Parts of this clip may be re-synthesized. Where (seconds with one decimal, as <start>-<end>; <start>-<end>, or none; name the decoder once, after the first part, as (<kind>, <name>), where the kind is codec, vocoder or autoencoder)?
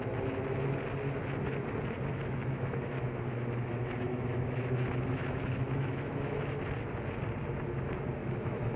2.1-6.6 (autoencoder, DAC-VAE); 8.2-8.8